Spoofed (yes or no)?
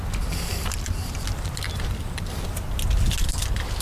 no